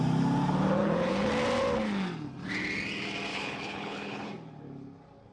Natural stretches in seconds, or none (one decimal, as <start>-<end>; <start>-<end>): 0.0-0.8; 1.3-3.3; 4.3-5.3